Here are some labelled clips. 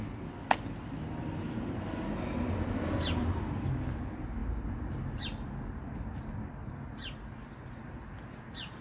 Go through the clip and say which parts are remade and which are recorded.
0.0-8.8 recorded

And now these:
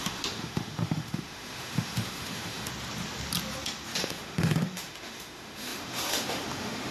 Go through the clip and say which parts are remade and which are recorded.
0.0-2.7 remade; 2.7-4.0 recorded; 4.0-6.9 remade

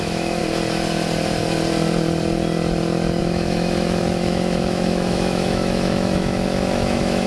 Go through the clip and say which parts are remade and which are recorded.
0.0-0.4 remade; 0.4-3.2 recorded; 3.2-7.3 remade

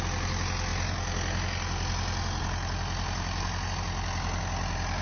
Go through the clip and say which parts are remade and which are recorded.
0.0-5.0 recorded

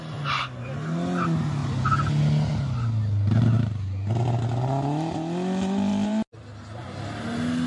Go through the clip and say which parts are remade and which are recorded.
0.0-7.7 recorded